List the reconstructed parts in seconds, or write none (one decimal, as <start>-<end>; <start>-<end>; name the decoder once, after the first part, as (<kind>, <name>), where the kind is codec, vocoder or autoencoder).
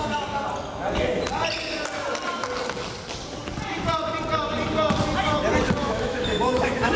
5.8-7.0 (autoencoder, DAC-VAE)